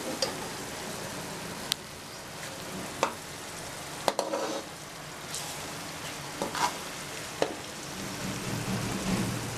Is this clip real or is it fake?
real